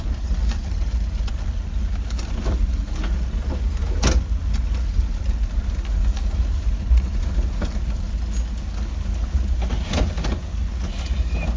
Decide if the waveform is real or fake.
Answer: real